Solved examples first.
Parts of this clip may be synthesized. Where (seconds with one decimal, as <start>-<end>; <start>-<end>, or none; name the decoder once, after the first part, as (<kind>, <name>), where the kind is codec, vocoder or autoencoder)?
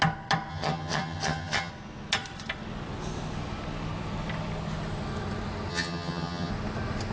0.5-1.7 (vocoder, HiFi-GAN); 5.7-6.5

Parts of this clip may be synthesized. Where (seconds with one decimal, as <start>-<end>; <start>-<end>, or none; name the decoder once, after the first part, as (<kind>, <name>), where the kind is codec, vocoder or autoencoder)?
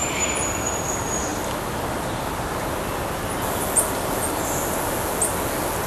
none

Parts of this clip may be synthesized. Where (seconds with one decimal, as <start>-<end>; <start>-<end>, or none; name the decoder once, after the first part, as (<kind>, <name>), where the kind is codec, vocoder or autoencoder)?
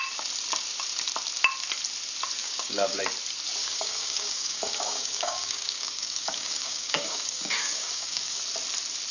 2.4-3.0 (codec, DAC); 3.6-8.4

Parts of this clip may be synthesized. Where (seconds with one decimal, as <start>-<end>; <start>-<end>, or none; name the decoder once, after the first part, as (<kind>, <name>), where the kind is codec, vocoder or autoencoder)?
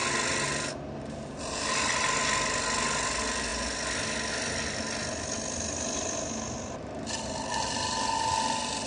none